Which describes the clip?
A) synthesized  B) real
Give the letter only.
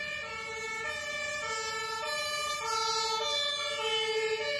B